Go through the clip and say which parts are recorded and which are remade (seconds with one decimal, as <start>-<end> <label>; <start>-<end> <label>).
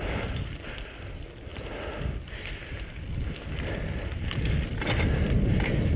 0.0-6.0 recorded